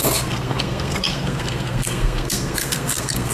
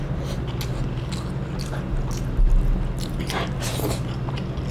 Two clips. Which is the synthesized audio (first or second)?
first